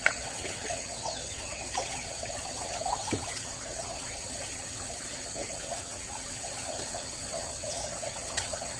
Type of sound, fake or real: fake